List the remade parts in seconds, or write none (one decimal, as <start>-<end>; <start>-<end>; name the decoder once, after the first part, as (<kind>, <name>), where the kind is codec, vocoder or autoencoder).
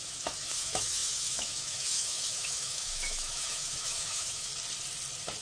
0.0-4.5 (autoencoder, DAC-VAE)